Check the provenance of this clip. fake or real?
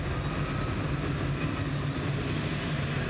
real